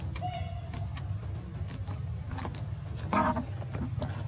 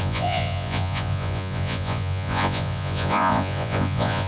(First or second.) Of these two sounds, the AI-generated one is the second